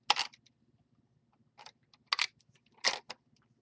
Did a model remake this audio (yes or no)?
no